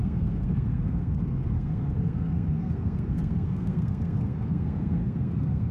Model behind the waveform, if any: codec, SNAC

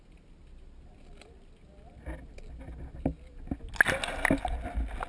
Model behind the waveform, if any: none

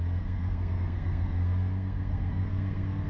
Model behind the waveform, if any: codec, SNAC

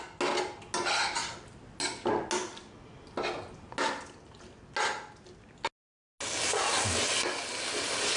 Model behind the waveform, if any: none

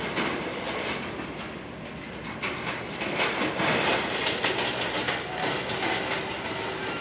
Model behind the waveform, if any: none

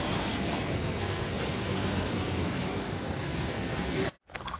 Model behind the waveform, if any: codec, SNAC